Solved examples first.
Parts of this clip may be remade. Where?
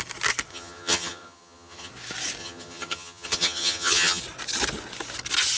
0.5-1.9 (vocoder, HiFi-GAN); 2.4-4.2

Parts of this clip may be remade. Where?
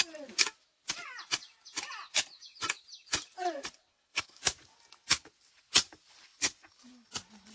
3.9-4.4 (codec, SNAC)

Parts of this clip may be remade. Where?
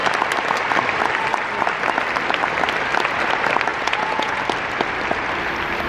3.7-4.4 (vocoder, Vocos)